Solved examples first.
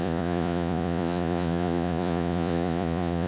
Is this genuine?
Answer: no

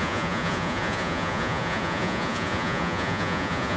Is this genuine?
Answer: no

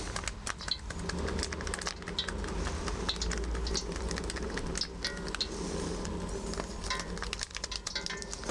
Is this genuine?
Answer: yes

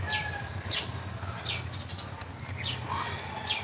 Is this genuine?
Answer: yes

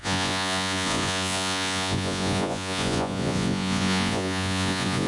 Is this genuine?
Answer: no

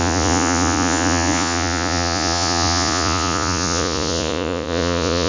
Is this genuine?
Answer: no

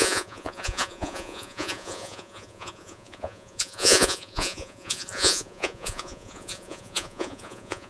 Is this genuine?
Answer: no